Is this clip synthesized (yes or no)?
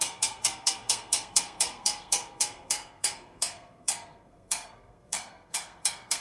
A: yes